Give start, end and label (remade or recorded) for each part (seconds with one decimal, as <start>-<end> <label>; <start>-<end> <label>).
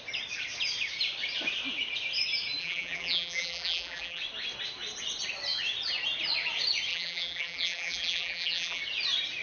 0.0-2.6 recorded; 2.6-4.2 remade; 4.2-6.9 recorded; 6.9-8.8 remade; 8.8-9.4 recorded